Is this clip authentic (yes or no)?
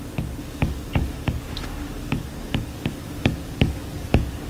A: no